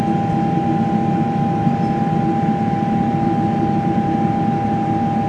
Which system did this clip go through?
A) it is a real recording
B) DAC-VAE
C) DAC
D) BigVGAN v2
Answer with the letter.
A